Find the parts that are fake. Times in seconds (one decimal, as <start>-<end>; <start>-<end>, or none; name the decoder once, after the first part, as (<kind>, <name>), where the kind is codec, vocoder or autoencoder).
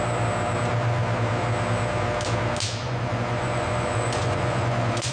2.8-5.1 (vocoder, Vocos)